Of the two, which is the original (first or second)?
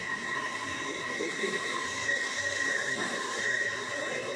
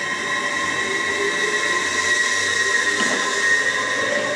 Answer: second